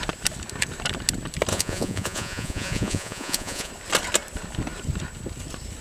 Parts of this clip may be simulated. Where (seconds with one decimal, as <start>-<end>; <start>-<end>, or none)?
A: 1.5-3.7

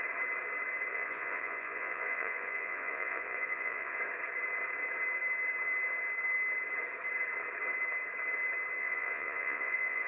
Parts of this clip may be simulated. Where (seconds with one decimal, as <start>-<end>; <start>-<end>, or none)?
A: 0.9-4.0; 8.8-10.1

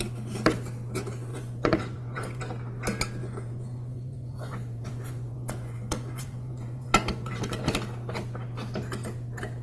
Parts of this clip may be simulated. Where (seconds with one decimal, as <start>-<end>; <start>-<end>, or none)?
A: 1.3-2.4; 3.2-7.6